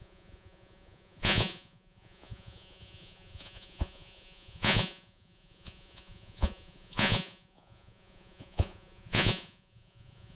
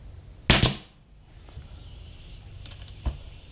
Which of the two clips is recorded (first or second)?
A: second